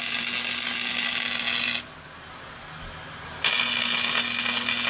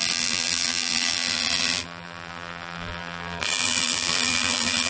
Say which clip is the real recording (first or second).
first